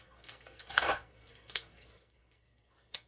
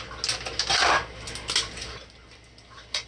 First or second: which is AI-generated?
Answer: first